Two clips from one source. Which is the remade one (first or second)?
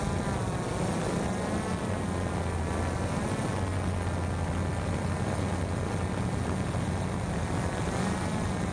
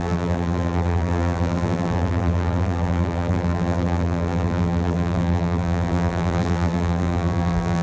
second